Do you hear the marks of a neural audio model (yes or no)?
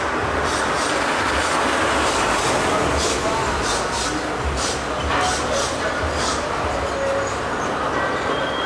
no